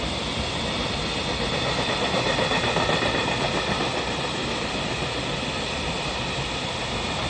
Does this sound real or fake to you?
real